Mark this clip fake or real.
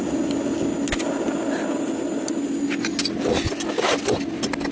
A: real